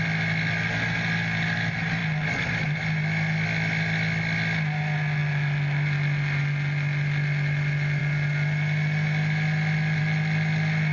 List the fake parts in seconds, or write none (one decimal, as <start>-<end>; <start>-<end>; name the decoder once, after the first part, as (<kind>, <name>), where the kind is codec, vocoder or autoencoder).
none